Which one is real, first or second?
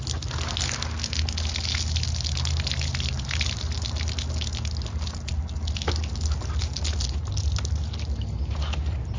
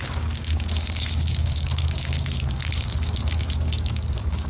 first